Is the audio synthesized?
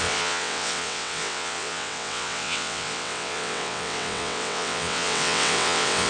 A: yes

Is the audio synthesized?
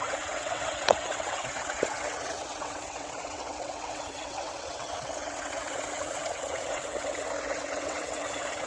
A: yes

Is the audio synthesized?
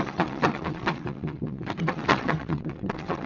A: yes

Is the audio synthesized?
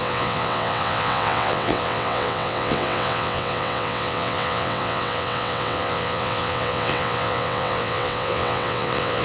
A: yes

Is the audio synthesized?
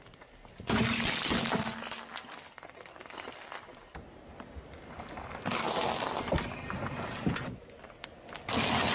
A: no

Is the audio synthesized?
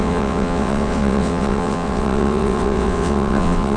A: yes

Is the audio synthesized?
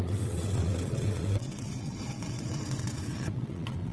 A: yes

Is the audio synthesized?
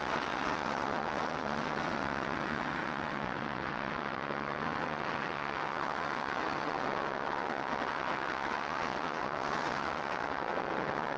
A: yes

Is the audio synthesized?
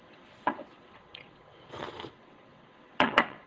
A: yes